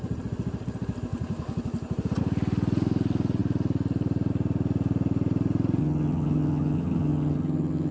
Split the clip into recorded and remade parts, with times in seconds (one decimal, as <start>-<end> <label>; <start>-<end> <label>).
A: 0.0-5.8 recorded; 5.8-7.9 remade